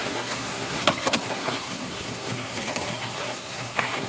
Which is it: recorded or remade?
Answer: remade